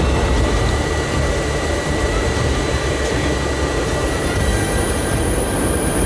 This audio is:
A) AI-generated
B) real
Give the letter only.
A